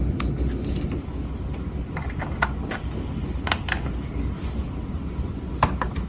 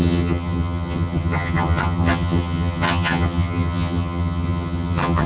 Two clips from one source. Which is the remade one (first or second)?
second